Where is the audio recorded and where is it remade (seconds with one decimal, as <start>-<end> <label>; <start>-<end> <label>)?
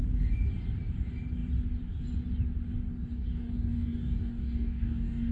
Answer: 0.0-3.1 recorded; 3.1-5.3 remade